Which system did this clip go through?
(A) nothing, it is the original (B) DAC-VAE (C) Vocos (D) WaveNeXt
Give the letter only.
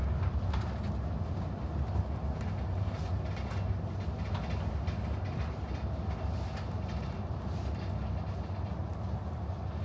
A